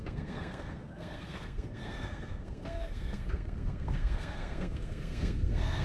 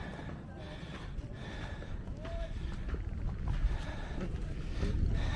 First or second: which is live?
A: second